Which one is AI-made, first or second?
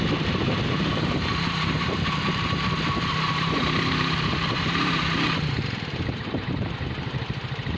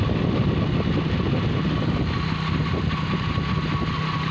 first